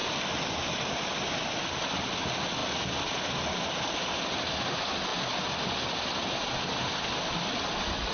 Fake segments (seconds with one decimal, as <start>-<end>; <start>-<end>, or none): none